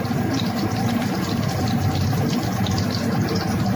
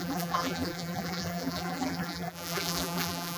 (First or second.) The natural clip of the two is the first